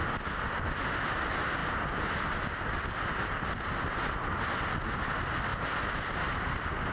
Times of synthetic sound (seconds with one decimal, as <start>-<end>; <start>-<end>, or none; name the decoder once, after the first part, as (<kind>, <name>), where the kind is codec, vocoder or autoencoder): 0.0-0.6 (vocoder, BigVGAN v2); 1.6-4.0; 5.5-6.9